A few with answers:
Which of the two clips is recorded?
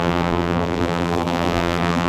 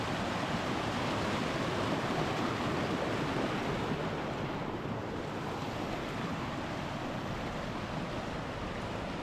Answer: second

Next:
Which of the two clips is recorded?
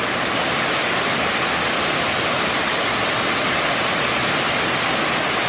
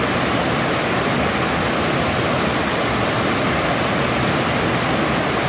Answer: second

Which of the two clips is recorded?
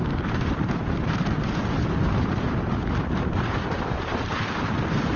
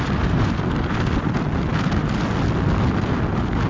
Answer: second